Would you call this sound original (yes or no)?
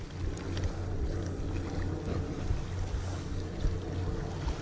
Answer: yes